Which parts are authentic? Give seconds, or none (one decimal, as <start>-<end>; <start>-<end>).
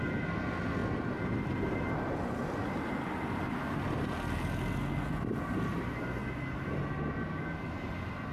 0.0-8.3